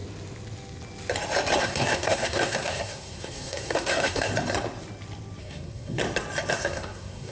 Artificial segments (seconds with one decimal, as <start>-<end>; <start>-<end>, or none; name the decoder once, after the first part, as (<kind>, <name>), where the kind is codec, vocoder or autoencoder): 1.6-4.3 (codec, SNAC); 5.4-6.0; 6.5-7.3